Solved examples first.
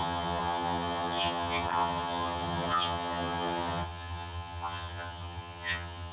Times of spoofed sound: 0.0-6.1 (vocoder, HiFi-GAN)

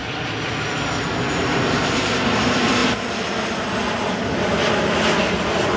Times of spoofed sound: none

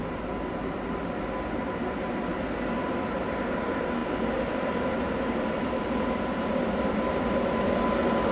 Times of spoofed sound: none

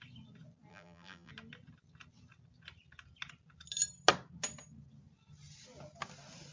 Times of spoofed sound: 0.7-1.3 (vocoder, BigVGAN v2)

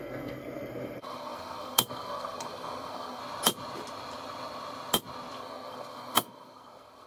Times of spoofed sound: 0.0-3.2 (codec, SNAC); 5.4-7.1

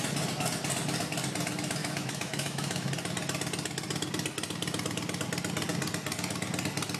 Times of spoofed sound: 1.8-2.9 (autoencoder, DAC-VAE)